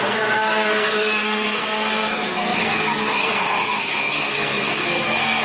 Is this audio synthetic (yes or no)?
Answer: yes